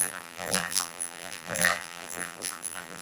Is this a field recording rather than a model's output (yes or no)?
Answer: no